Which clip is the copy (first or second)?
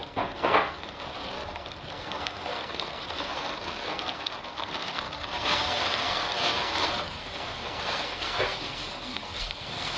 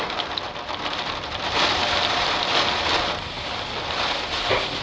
first